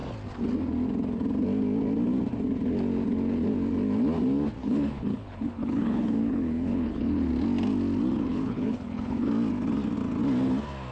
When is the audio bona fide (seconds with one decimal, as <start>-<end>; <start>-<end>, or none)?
0.0-4.6; 7.3-8.3; 9.3-10.9